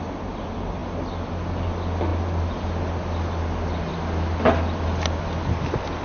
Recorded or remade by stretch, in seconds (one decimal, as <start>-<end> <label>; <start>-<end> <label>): 0.0-6.0 recorded